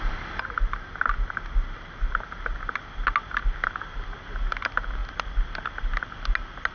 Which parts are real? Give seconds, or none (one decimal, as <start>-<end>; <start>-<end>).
0.0-6.7